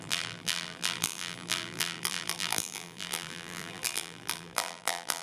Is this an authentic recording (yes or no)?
no